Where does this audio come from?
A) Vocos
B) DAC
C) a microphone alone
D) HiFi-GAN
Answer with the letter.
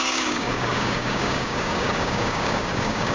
B